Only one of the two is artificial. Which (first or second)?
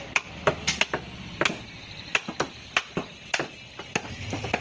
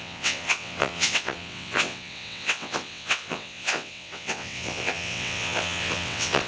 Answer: second